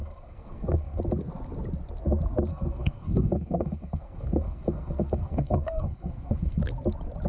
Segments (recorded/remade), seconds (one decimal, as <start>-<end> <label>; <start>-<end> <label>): 0.0-1.0 remade; 1.0-2.5 recorded; 2.5-6.6 remade; 6.6-7.3 recorded